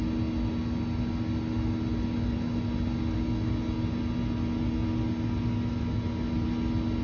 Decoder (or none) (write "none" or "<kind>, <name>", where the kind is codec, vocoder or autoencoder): none